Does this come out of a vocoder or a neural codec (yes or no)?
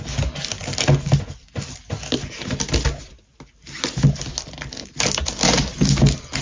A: no